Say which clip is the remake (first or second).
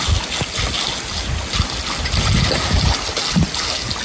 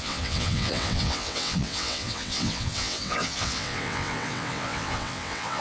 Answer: second